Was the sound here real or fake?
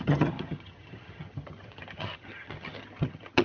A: fake